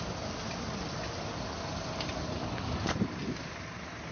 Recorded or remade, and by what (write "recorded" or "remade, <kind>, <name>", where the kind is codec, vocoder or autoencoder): recorded